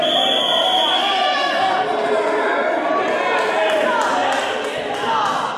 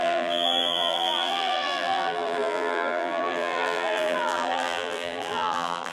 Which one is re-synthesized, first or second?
second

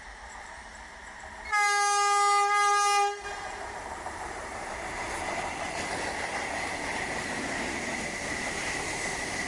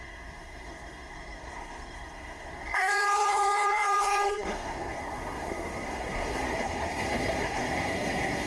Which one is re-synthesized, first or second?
second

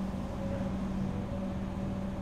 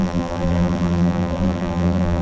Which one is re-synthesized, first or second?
second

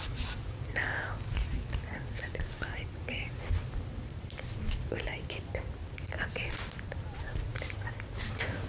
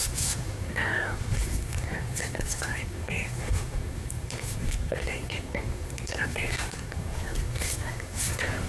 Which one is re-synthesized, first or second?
second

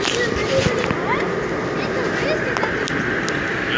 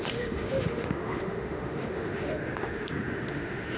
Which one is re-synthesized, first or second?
second